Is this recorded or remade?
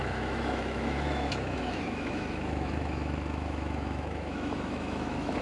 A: remade